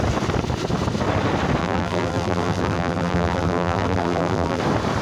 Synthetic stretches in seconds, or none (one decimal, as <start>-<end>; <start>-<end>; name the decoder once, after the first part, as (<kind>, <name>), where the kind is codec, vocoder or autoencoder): 1.6-4.6 (vocoder, BigVGAN v2)